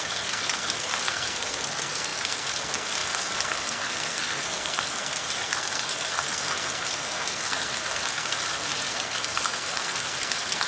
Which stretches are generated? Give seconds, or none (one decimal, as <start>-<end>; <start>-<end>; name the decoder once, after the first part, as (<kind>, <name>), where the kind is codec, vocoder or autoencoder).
0.0-10.7 (codec, SNAC)